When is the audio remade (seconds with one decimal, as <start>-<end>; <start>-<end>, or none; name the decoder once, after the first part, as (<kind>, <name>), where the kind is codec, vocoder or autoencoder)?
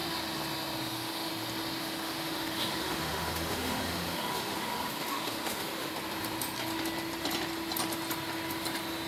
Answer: 0.8-1.3 (autoencoder, DAC-VAE); 1.8-5.9